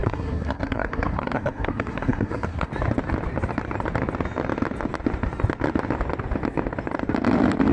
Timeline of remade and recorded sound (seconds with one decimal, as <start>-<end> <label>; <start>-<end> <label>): 0.0-2.7 remade; 2.7-7.7 recorded